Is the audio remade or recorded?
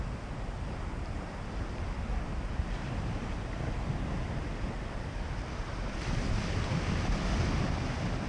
recorded